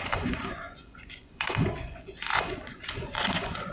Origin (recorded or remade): remade